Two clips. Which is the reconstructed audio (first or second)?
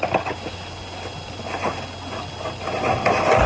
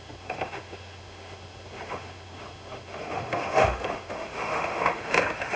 second